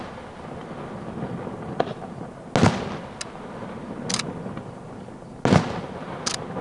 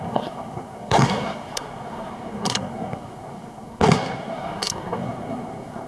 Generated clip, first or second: second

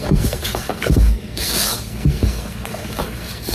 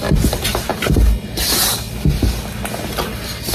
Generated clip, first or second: first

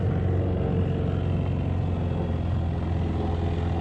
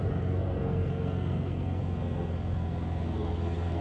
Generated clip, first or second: second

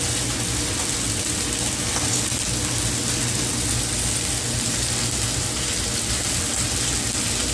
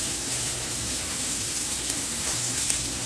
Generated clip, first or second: second